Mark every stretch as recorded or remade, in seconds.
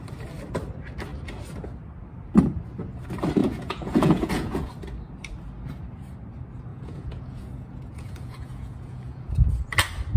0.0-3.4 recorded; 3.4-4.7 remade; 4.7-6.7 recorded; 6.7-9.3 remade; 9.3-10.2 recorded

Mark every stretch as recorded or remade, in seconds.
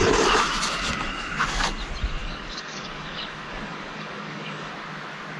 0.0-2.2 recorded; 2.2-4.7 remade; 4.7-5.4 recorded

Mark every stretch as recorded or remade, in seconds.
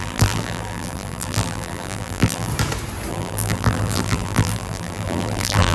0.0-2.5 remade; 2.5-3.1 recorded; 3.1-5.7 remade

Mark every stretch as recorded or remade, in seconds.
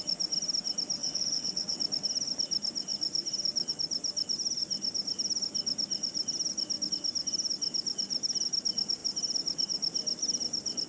0.0-1.0 recorded; 1.0-1.8 remade; 1.8-10.9 recorded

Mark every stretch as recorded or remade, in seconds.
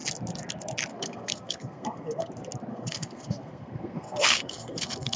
0.0-0.9 recorded; 0.9-2.3 remade; 2.3-2.7 recorded; 2.7-5.2 remade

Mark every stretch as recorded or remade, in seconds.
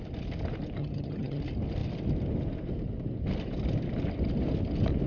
0.0-0.8 recorded; 0.8-1.4 remade; 1.4-5.1 recorded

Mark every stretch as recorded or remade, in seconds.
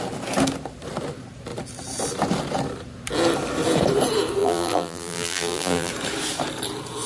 0.0-4.4 recorded; 4.4-5.9 remade; 5.9-7.1 recorded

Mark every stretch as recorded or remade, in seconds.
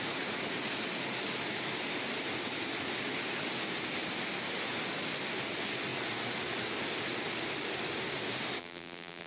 0.0-8.6 recorded; 8.6-9.3 remade